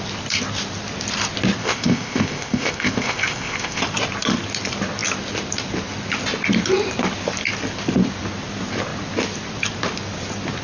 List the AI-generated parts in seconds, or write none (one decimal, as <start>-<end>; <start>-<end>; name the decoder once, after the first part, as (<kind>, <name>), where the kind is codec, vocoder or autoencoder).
1.6-3.8 (codec, ZipCodec)